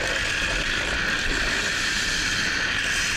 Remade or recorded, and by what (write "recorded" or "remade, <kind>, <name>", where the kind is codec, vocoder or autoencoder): recorded